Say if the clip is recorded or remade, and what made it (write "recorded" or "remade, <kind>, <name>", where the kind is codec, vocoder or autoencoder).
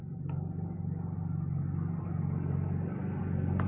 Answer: recorded